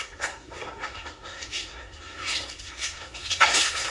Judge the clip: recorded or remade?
remade